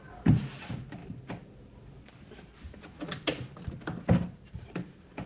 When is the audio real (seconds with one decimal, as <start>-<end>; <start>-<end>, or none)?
0.0-5.3